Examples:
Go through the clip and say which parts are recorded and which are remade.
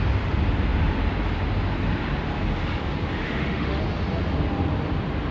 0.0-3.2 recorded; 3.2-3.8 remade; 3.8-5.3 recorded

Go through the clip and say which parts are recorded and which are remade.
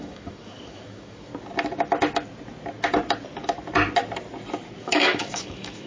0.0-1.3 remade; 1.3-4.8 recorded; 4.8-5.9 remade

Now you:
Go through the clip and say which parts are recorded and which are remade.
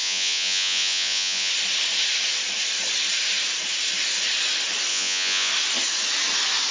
0.0-1.5 remade; 1.5-4.9 recorded; 4.9-5.5 remade; 5.5-6.7 recorded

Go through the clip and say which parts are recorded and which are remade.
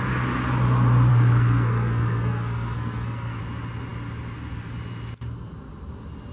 0.0-1.1 recorded; 1.1-3.4 remade; 3.4-6.3 recorded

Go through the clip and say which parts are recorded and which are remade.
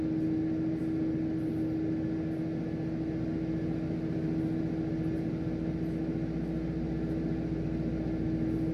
0.0-8.7 recorded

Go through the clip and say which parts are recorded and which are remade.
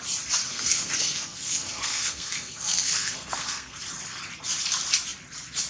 0.0-0.4 recorded; 0.4-3.8 remade; 3.8-5.7 recorded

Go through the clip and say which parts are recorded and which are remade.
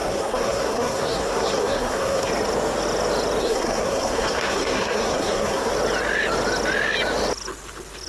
0.0-2.3 remade; 2.3-3.4 recorded; 3.4-5.7 remade; 5.7-8.1 recorded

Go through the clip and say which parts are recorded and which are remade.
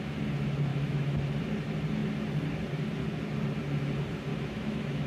0.0-0.7 recorded; 0.7-1.2 remade; 1.2-4.3 recorded; 4.3-5.1 remade